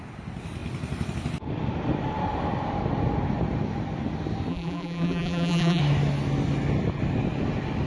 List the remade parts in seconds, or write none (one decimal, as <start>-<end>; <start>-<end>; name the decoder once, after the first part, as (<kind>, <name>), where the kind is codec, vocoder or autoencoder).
4.5-5.8 (vocoder, BigVGAN v2)